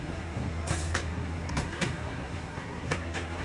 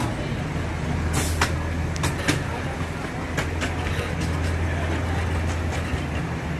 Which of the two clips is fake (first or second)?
first